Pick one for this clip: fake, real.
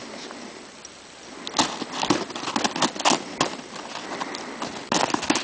real